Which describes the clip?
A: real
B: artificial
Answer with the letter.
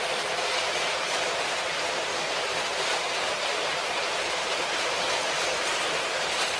B